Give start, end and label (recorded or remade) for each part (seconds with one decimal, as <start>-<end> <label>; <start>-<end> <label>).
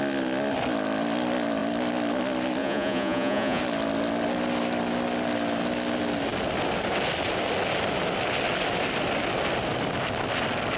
0.0-2.6 recorded; 2.6-3.6 remade; 3.6-10.8 recorded